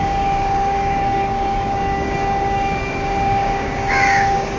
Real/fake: fake